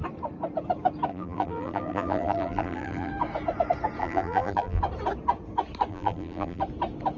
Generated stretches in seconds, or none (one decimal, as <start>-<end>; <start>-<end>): 1.1-3.1; 4.0-4.8; 5.9-6.6